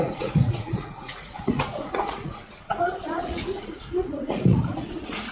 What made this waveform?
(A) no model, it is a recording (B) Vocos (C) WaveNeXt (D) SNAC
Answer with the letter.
B